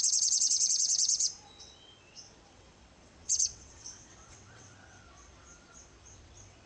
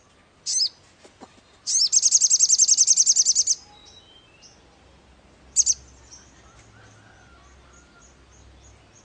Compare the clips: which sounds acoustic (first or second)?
second